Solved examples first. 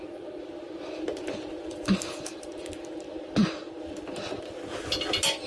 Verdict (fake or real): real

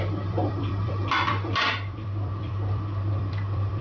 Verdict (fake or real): fake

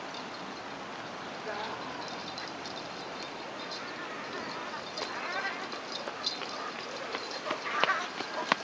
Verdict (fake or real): real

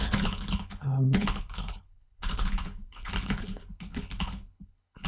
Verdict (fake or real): fake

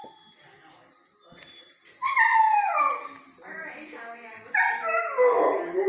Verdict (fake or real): real